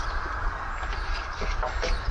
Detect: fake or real real